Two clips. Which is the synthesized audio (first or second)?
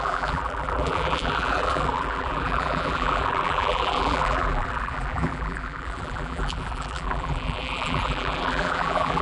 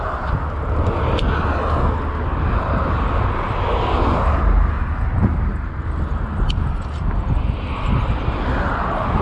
first